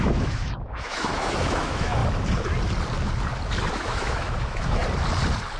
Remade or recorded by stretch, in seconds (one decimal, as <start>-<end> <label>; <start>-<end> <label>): 0.0-2.0 remade; 2.0-3.7 recorded; 3.7-4.8 remade; 4.8-5.6 recorded